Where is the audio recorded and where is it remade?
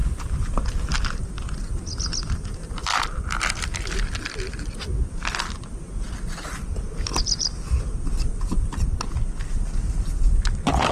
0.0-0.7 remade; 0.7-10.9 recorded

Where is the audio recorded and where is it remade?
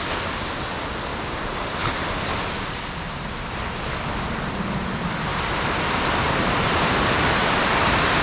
0.0-1.1 recorded; 1.1-2.1 remade; 2.1-5.3 recorded; 5.3-8.2 remade